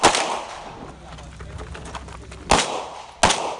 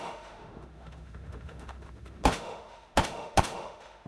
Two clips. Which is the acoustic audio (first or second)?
first